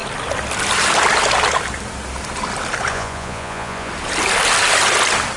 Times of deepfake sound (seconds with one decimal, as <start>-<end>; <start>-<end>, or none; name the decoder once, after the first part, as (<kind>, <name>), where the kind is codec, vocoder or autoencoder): 2.9-3.9 (vocoder, Vocos)